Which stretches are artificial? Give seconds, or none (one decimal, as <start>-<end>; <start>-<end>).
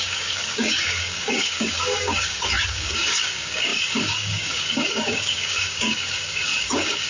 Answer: 0.0-7.1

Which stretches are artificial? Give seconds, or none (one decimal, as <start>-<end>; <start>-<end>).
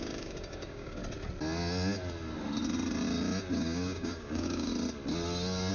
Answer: 0.0-1.0; 3.5-4.7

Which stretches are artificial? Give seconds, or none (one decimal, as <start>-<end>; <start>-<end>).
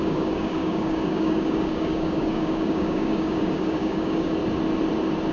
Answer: 0.0-4.4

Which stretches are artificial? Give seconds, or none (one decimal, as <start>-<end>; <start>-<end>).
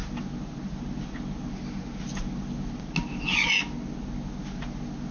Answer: none